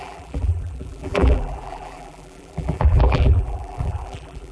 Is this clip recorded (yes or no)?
no